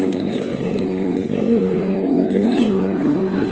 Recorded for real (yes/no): no